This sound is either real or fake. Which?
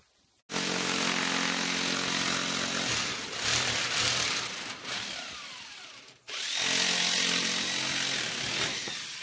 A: real